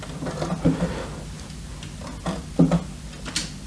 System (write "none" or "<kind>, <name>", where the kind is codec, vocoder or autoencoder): none